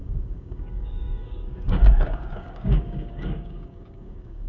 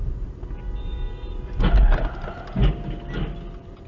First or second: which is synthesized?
first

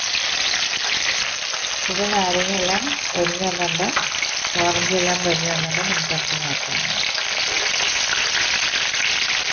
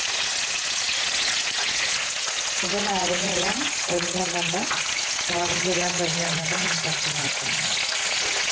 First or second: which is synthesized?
second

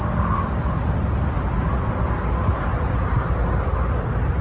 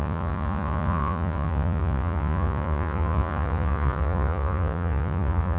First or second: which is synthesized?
second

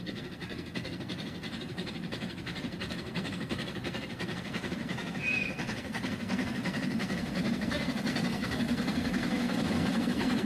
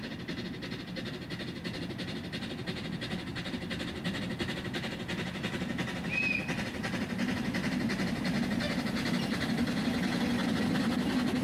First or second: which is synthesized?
first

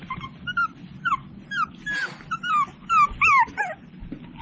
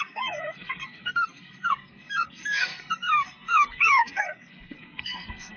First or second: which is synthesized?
second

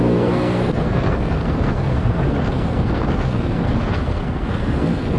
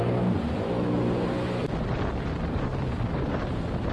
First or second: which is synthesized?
first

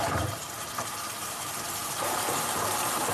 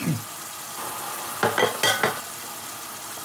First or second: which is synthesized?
first